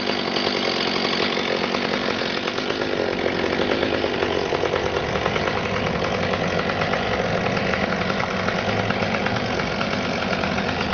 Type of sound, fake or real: real